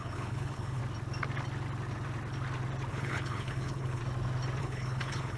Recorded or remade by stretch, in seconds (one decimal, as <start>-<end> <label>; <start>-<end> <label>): 0.0-0.8 remade; 0.8-2.9 recorded; 2.9-4.0 remade; 4.0-4.6 recorded; 4.6-5.4 remade